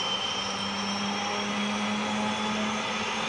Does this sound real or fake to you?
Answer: real